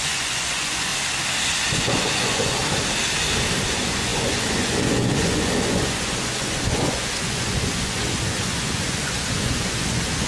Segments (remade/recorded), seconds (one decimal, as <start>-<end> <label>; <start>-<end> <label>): 0.0-0.9 remade; 0.9-1.6 recorded; 1.6-2.6 remade; 2.6-3.6 recorded; 3.6-10.3 remade